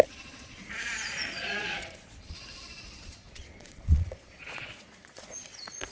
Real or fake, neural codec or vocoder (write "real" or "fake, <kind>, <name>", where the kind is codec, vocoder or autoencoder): fake, vocoder, Vocos